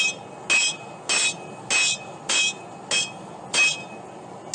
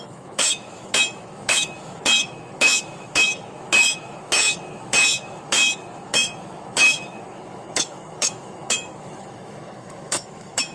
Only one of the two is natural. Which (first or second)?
first